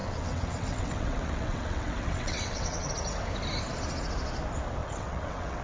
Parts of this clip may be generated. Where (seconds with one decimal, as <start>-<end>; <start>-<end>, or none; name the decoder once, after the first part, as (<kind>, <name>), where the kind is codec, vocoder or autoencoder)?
0.0-2.9 (vocoder, WaveNeXt); 4.8-5.6